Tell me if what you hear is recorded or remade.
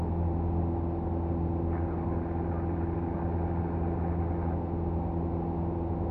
recorded